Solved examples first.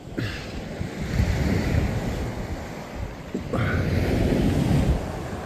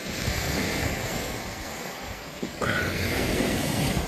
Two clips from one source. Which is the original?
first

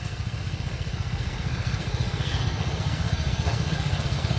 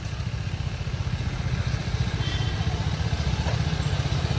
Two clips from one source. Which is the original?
second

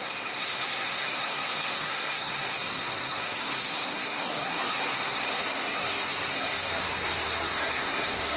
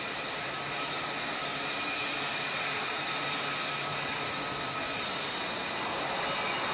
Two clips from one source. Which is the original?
second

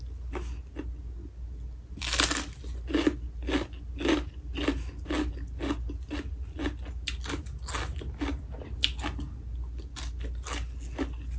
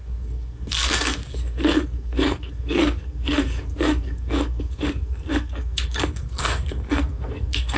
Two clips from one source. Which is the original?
first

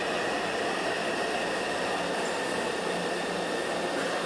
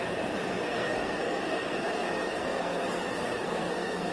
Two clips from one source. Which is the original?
first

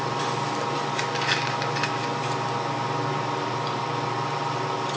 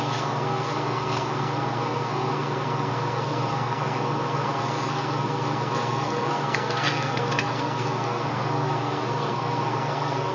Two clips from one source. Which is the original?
first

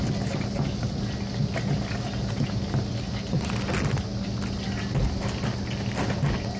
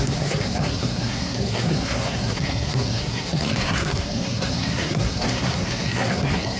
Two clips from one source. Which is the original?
first